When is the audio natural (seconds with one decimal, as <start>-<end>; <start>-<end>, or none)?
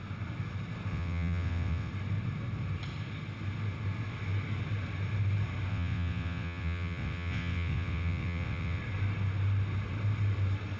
0.0-0.9; 1.9-5.7; 8.8-10.8